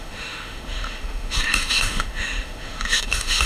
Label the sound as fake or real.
fake